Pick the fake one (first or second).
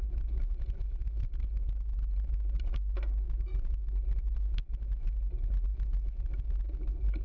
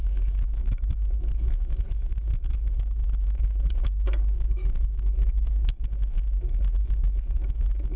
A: second